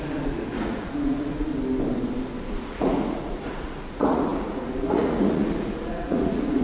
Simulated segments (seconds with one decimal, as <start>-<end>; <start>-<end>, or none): 0.0-1.5; 2.6-6.6